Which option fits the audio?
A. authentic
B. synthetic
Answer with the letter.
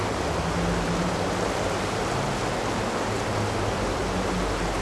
A